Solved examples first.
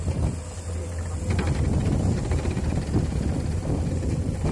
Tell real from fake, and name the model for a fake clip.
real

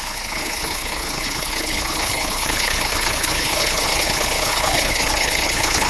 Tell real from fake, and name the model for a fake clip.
fake, codec, HILCodec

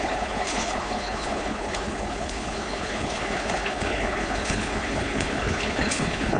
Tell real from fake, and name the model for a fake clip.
fake, codec, HILCodec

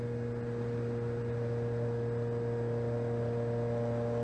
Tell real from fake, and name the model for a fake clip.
real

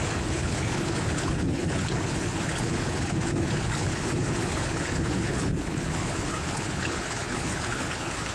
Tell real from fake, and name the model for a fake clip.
fake, codec, HILCodec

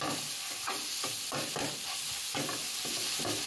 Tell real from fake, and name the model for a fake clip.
real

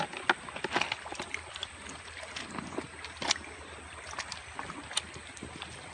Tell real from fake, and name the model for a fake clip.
real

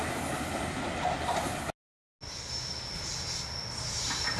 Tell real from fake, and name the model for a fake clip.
real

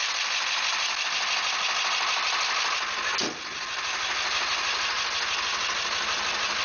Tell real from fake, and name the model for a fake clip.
real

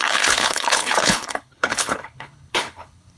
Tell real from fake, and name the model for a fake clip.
fake, codec, HILCodec